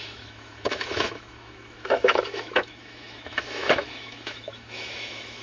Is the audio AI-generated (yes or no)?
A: yes